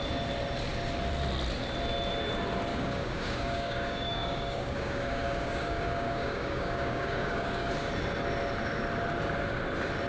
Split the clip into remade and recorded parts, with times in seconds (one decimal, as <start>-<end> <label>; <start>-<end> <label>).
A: 0.0-2.7 recorded; 2.7-7.7 remade; 7.7-10.1 recorded

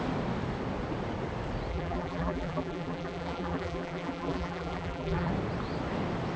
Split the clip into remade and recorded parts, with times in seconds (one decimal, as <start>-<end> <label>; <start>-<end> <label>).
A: 0.0-1.7 recorded; 1.7-5.3 remade; 5.3-6.4 recorded

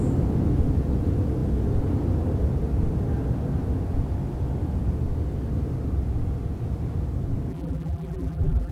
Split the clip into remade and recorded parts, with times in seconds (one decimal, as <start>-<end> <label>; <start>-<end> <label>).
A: 0.0-7.5 recorded; 7.5-8.7 remade

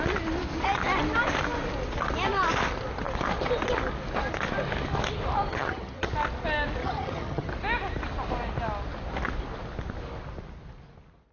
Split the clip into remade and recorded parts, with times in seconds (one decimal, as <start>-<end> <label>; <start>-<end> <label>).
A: 0.0-5.5 recorded; 5.5-6.1 remade; 6.1-6.8 recorded; 6.8-7.5 remade; 7.5-11.3 recorded

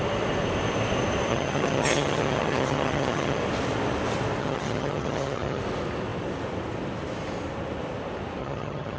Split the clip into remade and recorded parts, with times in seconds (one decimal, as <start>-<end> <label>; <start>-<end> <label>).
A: 0.0-1.3 recorded; 1.3-3.4 remade; 3.4-4.4 recorded; 4.4-5.6 remade; 5.6-8.4 recorded; 8.4-9.0 remade

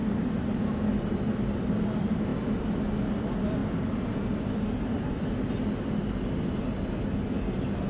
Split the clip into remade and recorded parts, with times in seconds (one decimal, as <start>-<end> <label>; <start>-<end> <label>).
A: 0.0-7.9 recorded

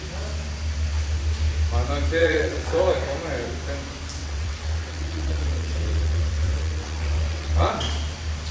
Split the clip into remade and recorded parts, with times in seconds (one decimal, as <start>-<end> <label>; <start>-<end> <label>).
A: 0.0-2.2 recorded; 2.2-2.8 remade; 2.8-4.2 recorded; 4.2-7.7 remade; 7.7-8.5 recorded